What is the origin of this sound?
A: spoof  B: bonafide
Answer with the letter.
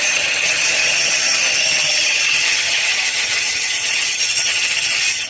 A